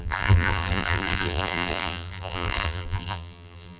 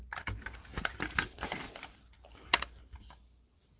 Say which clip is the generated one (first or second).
first